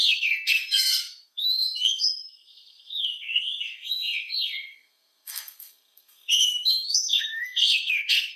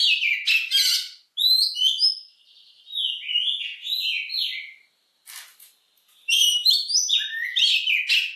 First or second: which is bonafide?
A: second